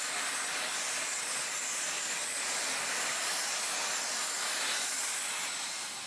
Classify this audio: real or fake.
real